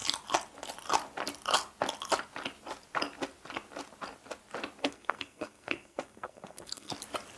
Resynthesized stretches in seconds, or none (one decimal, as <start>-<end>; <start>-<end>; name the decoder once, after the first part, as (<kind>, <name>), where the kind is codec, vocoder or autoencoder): 4.8-6.9 (codec, SNAC)